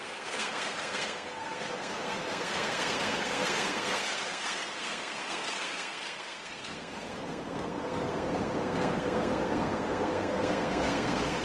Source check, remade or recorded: remade